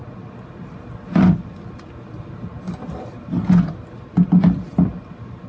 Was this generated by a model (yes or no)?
no